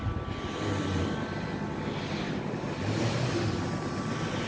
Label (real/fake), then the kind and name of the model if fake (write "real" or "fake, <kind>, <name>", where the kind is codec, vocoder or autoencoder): real